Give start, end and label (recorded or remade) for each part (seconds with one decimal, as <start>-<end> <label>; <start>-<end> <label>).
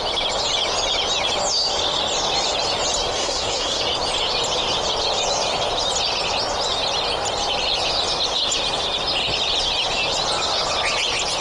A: 0.0-3.2 recorded; 3.2-3.8 remade; 3.8-11.4 recorded